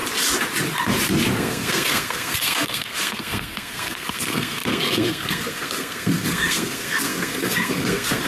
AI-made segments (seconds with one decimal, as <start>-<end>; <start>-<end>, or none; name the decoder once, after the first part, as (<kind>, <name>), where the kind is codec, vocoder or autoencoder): 1.4-8.3 (codec, SNAC)